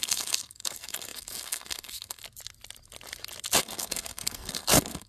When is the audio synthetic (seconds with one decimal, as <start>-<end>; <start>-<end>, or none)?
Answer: 0.0-2.2; 3.6-5.1